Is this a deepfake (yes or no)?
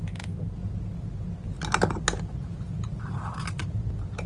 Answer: no